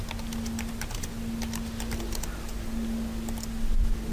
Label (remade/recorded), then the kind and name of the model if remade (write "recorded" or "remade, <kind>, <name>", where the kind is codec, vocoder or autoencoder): recorded